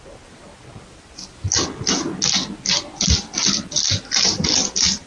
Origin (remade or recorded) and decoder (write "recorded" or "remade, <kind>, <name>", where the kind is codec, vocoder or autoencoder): recorded